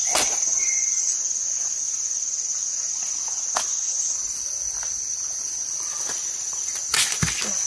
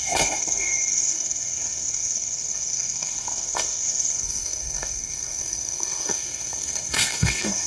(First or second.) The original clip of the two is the first